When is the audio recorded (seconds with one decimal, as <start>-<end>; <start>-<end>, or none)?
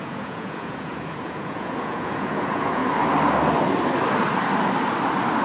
2.8-5.4